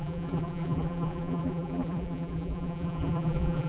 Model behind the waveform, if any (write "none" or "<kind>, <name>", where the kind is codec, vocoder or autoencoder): vocoder, BigVGAN v2